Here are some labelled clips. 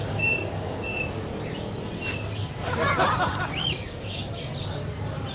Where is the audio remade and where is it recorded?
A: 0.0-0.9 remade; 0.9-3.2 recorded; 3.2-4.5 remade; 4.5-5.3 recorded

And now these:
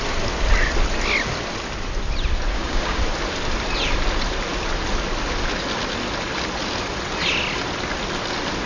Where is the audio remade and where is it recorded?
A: 0.0-2.5 recorded; 2.5-3.0 remade; 3.0-8.7 recorded

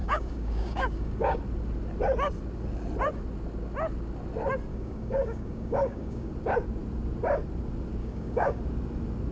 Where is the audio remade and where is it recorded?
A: 0.0-1.4 remade; 1.4-4.7 recorded; 4.7-6.3 remade; 6.3-8.0 recorded; 8.0-8.6 remade; 8.6-9.3 recorded

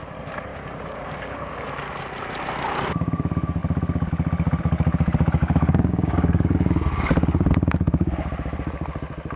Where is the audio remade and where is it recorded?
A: 0.0-0.5 recorded; 0.5-1.5 remade; 1.5-5.4 recorded; 5.4-8.1 remade; 8.1-9.4 recorded

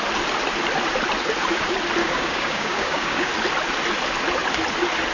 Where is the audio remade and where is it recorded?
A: 0.0-2.0 recorded; 2.0-3.3 remade; 3.3-5.1 recorded

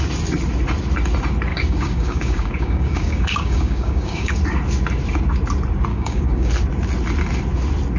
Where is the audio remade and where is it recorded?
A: 0.0-1.5 recorded; 1.5-4.3 remade; 4.3-5.9 recorded; 5.9-6.5 remade; 6.5-8.0 recorded

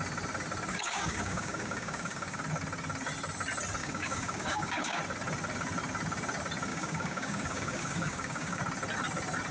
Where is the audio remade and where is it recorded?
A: 0.0-0.7 recorded; 0.7-2.4 remade; 2.4-3.8 recorded; 3.8-5.0 remade; 5.0-6.7 recorded; 6.7-8.6 remade; 8.6-9.5 recorded

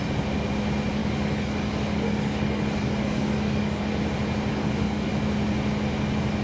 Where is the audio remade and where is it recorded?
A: 0.0-1.0 recorded; 1.0-3.8 remade; 3.8-4.5 recorded; 4.5-5.1 remade; 5.1-6.4 recorded